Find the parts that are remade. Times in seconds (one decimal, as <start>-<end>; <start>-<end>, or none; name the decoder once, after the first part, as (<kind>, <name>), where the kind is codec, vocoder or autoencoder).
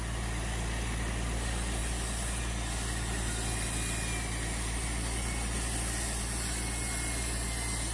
none